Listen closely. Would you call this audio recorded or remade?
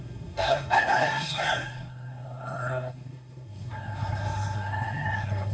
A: remade